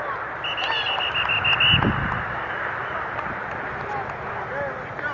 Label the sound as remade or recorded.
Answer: recorded